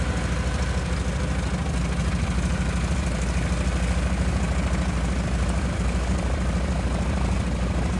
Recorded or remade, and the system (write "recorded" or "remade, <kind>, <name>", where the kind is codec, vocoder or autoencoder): recorded